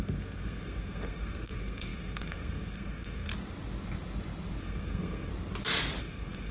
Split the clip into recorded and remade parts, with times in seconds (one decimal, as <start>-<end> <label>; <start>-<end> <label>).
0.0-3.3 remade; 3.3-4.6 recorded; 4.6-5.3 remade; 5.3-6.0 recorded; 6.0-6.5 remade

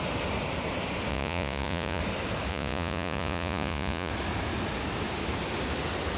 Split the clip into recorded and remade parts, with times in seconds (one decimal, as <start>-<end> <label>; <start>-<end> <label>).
0.0-1.1 recorded; 1.1-2.0 remade; 2.0-2.5 recorded; 2.5-4.1 remade; 4.1-6.2 recorded

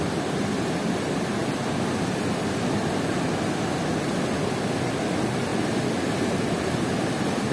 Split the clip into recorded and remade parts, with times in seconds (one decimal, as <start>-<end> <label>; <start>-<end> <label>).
0.0-7.5 recorded

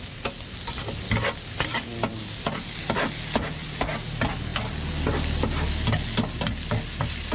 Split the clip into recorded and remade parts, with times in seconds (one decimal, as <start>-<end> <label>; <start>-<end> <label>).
0.0-7.3 recorded

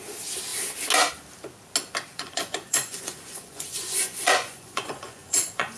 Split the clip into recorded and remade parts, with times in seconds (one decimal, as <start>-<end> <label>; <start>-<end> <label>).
0.0-2.1 recorded; 2.1-5.8 remade